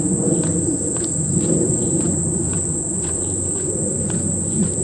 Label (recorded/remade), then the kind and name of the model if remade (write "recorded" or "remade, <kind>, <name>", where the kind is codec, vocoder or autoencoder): remade, vocoder, Vocos